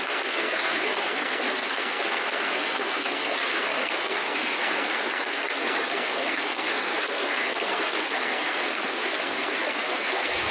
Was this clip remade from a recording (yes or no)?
yes